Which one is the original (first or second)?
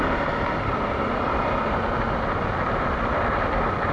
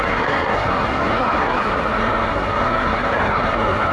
first